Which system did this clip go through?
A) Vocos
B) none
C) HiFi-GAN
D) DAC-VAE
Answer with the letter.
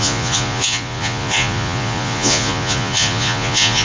A